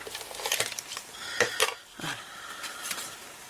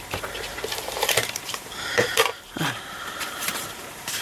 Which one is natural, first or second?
first